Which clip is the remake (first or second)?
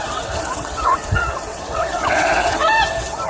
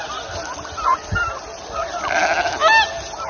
first